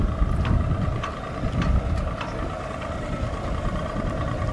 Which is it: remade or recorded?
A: remade